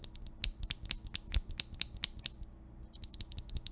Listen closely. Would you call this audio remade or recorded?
recorded